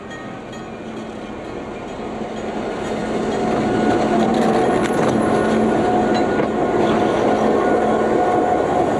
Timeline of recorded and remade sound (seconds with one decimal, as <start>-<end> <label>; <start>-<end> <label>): 0.0-9.0 recorded